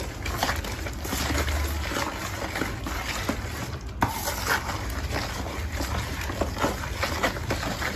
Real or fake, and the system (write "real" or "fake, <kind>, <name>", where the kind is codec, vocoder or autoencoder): real